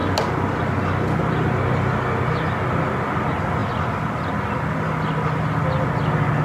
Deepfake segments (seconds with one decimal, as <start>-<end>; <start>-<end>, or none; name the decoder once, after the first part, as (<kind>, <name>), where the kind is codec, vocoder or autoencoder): none